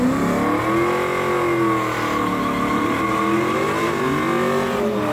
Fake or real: real